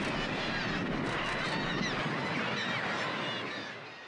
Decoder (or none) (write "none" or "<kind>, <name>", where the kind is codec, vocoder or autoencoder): none